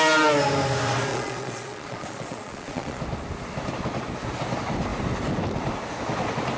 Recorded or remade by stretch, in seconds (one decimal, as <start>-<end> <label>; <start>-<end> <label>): 0.0-1.1 recorded; 1.1-3.0 remade; 3.0-6.6 recorded